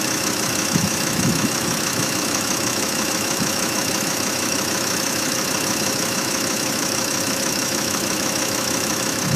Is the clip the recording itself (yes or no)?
no